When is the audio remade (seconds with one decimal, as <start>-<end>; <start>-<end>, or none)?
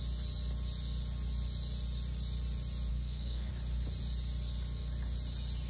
2.9-3.5